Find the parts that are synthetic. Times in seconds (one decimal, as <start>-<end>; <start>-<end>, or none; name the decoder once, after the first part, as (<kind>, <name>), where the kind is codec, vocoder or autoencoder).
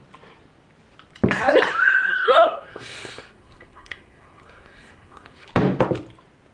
1.8-5.5 (codec, SNAC)